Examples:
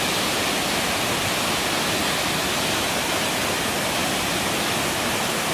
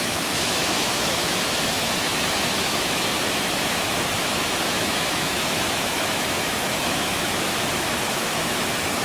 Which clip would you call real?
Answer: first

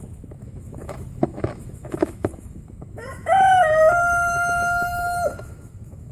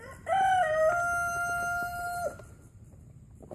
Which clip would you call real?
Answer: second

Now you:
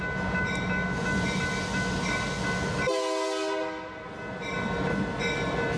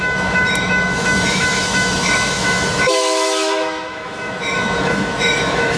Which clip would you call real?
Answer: first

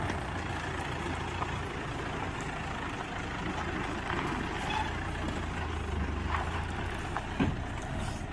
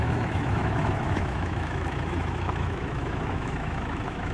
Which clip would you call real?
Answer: first